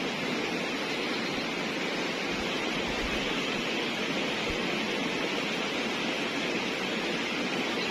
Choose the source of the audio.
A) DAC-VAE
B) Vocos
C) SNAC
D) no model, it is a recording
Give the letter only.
D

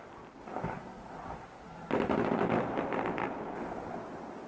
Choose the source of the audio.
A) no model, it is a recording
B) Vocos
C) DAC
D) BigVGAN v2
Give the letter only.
A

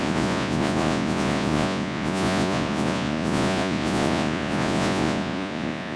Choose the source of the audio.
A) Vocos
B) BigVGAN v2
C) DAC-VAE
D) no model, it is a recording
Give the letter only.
A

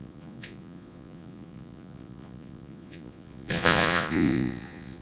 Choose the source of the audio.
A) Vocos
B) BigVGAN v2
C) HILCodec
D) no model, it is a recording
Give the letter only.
A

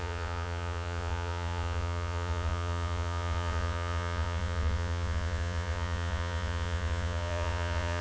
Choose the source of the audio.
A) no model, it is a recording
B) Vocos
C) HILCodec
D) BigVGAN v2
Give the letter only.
B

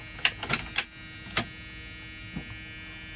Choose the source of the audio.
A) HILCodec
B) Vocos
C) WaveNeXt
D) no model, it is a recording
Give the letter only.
D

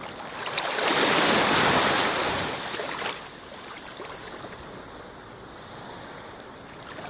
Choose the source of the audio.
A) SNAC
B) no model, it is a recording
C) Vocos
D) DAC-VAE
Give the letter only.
B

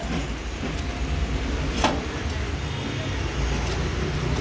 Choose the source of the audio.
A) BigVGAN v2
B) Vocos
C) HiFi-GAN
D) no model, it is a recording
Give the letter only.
D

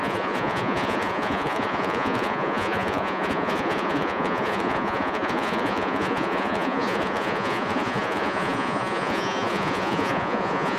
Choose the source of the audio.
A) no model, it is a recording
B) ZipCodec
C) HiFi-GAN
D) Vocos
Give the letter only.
D